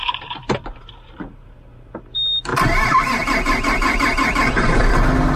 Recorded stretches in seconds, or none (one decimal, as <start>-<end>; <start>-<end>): 1.9-2.5; 4.9-5.4